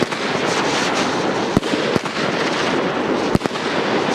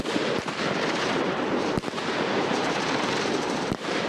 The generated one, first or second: second